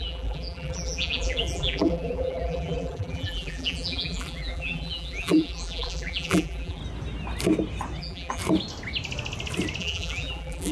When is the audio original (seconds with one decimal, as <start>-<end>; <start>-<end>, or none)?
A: 6.8-8.0; 8.4-9.8